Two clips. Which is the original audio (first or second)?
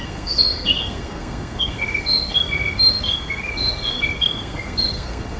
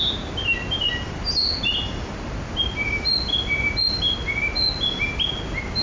second